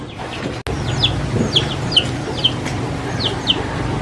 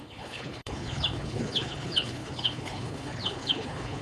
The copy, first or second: second